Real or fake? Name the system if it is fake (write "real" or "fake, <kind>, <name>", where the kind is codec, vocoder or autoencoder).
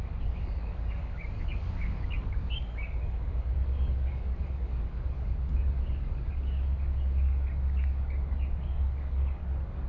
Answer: fake, codec, DAC